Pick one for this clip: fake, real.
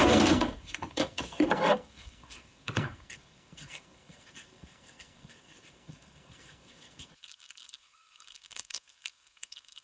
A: fake